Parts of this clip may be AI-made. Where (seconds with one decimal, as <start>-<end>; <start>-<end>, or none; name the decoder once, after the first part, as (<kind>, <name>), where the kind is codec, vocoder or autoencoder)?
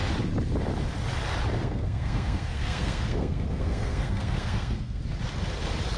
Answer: 1.6-5.0 (codec, SNAC)